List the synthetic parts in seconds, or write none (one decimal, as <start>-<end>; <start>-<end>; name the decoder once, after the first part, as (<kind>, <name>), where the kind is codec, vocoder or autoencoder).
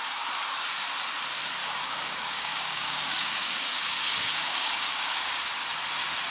1.6-5.4 (codec, DAC)